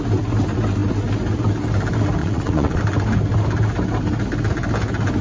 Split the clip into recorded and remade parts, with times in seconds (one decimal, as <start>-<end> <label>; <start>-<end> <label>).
0.0-2.2 recorded; 2.2-2.8 remade; 2.8-5.2 recorded